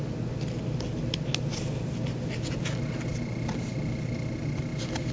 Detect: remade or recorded recorded